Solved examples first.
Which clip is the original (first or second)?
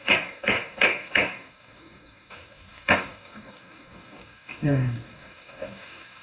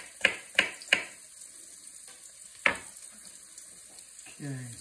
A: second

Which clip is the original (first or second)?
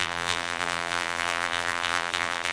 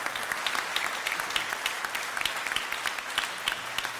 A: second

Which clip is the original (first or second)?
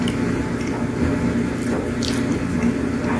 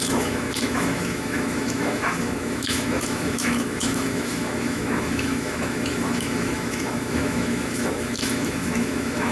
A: first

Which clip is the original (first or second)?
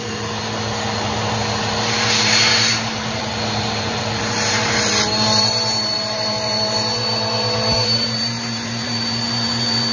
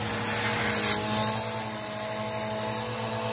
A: second